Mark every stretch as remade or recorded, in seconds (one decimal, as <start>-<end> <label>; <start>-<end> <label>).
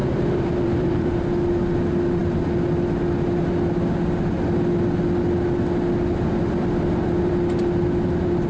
0.0-1.2 remade; 1.2-8.5 recorded